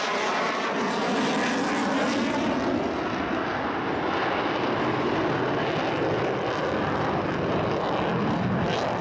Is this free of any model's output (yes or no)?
yes